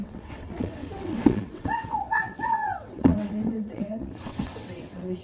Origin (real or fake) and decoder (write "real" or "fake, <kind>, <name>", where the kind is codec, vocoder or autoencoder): fake, vocoder, WaveNeXt